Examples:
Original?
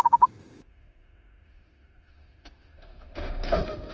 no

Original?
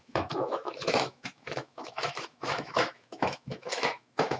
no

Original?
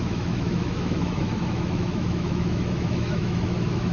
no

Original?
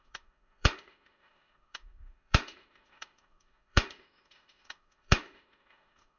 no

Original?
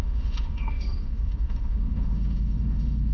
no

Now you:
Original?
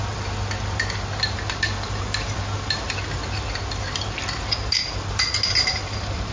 yes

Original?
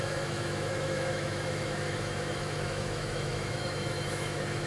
no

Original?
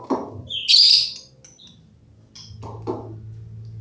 yes